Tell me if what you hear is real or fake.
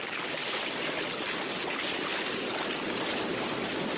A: real